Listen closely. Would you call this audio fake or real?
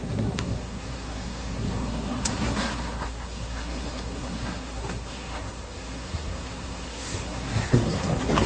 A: fake